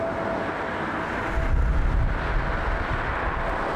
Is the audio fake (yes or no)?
no